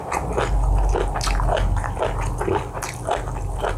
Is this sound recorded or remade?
recorded